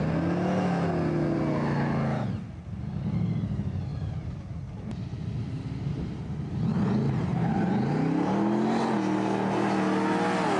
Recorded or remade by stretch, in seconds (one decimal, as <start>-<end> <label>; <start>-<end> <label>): 0.0-3.9 recorded; 3.9-6.6 remade; 6.6-10.6 recorded